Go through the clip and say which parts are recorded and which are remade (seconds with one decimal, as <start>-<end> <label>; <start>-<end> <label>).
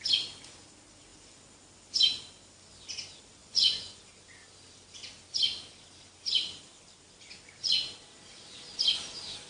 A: 0.0-3.4 recorded; 3.4-4.0 remade; 4.0-9.5 recorded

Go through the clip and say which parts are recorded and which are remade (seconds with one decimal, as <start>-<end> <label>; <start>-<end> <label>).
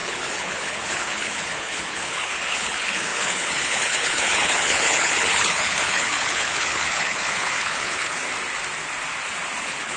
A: 0.0-8.2 remade; 8.2-9.6 recorded; 9.6-10.0 remade